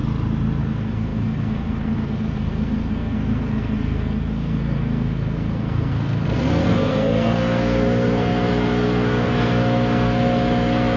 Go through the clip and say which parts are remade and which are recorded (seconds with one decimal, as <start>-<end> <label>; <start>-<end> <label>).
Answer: 0.0-0.6 recorded; 0.6-11.0 remade